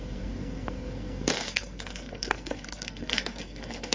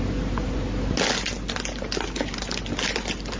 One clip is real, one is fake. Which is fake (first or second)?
first